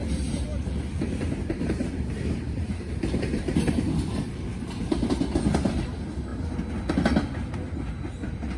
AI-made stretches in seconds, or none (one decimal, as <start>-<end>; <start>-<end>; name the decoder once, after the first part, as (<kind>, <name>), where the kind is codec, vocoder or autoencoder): 0.5-3.9 (vocoder, BigVGAN v2); 4.5-5.1